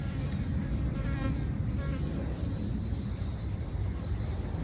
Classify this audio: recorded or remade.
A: recorded